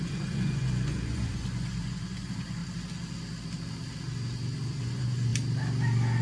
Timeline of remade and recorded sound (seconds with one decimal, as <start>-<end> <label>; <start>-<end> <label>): 0.0-2.6 remade; 2.6-4.8 recorded; 4.8-5.3 remade; 5.3-6.2 recorded